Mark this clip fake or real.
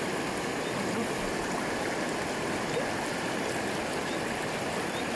real